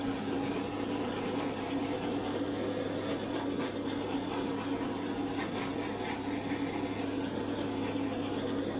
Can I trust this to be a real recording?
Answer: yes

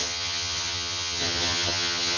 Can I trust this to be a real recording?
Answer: no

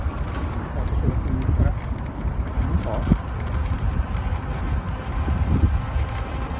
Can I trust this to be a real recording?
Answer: yes